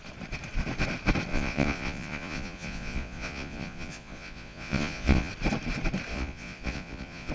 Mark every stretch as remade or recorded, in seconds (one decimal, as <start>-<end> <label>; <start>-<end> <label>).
0.0-1.3 recorded; 1.3-5.3 remade; 5.3-6.1 recorded; 6.1-7.3 remade